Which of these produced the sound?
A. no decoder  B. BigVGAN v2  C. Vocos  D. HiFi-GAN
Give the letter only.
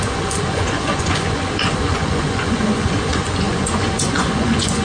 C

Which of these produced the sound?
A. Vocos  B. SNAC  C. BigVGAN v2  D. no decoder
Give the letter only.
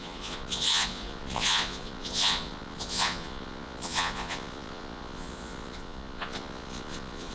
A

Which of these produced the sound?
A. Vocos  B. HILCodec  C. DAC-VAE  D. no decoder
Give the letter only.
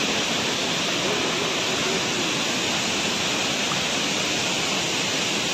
D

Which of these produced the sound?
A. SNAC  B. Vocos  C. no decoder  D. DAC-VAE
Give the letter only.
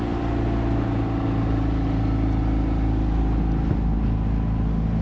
C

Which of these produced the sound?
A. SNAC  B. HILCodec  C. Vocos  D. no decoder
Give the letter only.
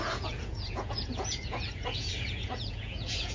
C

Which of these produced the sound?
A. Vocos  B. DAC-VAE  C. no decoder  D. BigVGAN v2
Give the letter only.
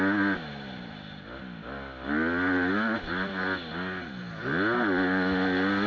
C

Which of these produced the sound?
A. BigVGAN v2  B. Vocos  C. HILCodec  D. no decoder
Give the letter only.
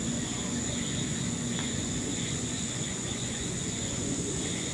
B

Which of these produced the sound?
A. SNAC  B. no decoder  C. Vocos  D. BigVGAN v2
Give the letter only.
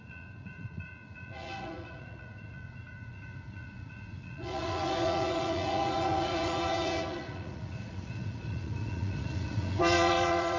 C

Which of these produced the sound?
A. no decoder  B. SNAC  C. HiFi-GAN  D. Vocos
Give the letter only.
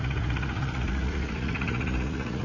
D